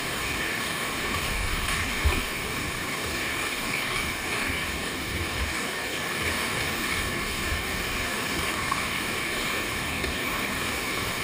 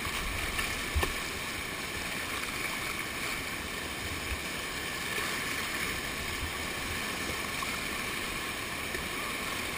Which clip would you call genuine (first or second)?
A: second